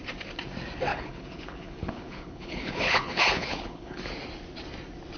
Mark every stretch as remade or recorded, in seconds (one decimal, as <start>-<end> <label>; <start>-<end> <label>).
0.0-0.9 recorded; 0.9-4.0 remade; 4.0-5.2 recorded